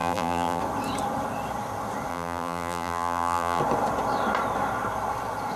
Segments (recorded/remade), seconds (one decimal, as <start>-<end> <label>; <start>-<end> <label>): 0.0-0.6 remade; 0.6-2.1 recorded; 2.1-3.6 remade; 3.6-5.6 recorded

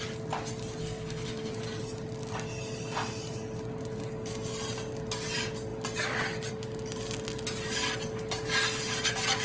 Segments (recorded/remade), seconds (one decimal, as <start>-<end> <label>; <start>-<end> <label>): 0.0-0.8 recorded; 0.8-1.5 remade; 1.5-9.4 recorded

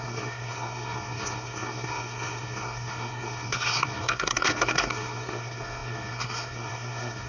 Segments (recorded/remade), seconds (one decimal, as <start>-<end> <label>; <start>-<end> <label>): 0.0-7.3 remade

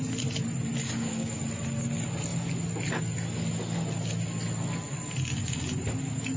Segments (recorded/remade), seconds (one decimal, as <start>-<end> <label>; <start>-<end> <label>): 0.0-0.8 recorded; 0.8-1.4 remade; 1.4-6.4 recorded